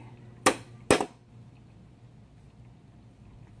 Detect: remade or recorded recorded